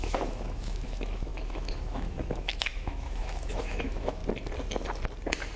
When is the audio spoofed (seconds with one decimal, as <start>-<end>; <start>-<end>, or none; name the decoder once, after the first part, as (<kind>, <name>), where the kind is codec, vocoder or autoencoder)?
0.0-4.2 (autoencoder, DAC-VAE)